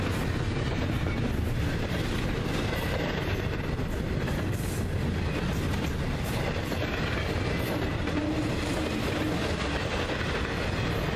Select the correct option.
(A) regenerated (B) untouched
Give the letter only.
B